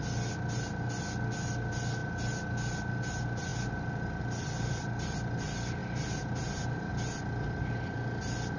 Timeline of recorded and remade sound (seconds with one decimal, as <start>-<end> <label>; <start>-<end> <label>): 0.0-5.8 recorded; 5.8-6.9 remade; 6.9-8.6 recorded